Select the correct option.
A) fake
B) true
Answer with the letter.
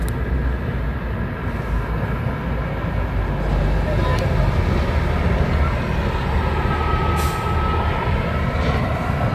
B